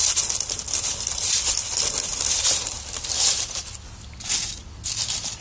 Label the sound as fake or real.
real